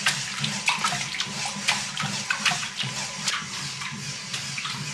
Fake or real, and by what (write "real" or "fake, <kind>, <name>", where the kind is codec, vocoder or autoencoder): real